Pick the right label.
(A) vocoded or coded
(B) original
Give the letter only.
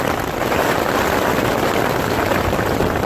B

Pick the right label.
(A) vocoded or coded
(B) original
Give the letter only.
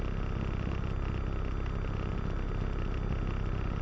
B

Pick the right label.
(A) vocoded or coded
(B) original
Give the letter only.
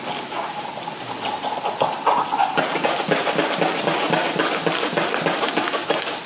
B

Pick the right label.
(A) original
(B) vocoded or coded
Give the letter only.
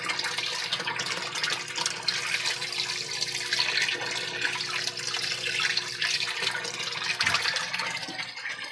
A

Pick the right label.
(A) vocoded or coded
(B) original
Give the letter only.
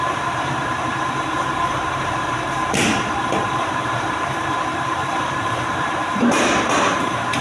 A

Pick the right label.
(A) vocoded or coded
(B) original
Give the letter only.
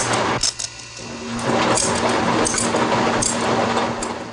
B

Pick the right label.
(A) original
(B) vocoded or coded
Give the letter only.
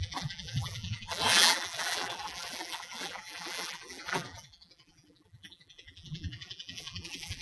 B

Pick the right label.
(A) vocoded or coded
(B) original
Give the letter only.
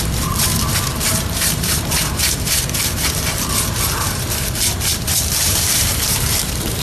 A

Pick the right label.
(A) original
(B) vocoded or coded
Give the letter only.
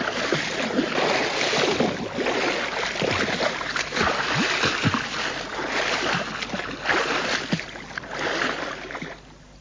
A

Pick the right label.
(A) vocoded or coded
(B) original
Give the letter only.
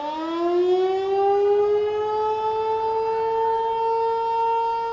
B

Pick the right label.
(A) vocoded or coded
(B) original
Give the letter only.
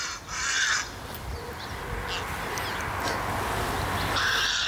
B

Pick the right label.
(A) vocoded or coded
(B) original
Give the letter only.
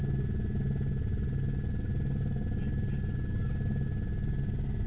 B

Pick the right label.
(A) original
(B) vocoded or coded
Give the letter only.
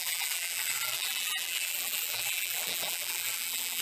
B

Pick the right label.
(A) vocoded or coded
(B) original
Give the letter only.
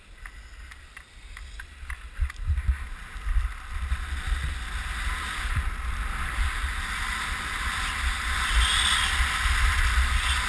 B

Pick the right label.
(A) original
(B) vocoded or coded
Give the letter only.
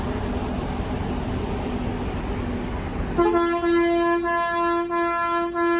A